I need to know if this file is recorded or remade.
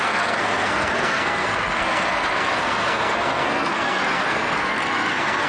remade